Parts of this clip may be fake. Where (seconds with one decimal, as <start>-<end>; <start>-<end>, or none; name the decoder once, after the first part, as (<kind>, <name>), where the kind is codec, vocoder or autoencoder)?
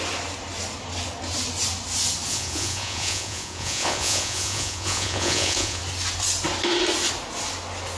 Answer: 2.3-5.8 (vocoder, Vocos)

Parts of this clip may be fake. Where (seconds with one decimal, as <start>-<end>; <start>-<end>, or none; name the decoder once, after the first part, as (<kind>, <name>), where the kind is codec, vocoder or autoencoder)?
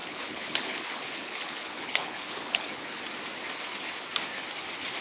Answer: 0.0-3.0 (codec, HILCodec)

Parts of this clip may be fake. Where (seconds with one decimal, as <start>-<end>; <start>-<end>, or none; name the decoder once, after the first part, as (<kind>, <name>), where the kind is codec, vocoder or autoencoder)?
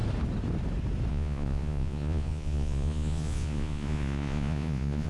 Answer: 1.1-5.1 (vocoder, Vocos)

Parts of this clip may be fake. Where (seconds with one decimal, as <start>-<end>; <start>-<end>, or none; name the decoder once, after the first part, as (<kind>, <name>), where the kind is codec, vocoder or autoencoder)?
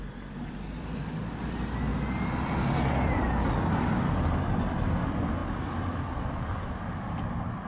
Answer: none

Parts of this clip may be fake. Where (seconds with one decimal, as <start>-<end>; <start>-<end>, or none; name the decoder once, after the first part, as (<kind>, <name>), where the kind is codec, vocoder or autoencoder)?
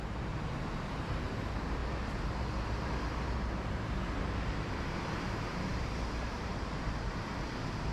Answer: 0.0-1.8 (vocoder, BigVGAN v2); 4.2-7.9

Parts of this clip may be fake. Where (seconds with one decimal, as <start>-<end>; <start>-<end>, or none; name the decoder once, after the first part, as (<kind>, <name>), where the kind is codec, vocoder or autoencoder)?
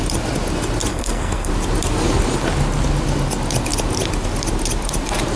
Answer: 0.9-1.5 (codec, SNAC)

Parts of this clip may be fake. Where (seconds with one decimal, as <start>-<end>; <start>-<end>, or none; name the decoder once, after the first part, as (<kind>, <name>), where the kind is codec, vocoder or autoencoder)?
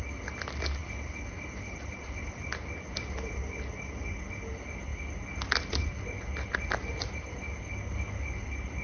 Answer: none